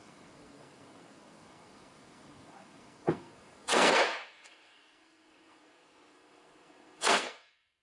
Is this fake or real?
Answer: fake